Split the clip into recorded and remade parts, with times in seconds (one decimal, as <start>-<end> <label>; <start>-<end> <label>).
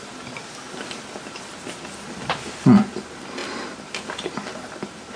0.0-5.2 recorded